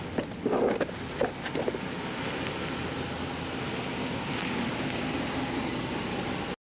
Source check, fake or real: real